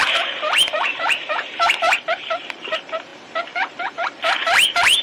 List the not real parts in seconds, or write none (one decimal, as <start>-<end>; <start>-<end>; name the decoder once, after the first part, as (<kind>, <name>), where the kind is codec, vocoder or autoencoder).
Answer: 0.0-5.0 (vocoder, BigVGAN v2)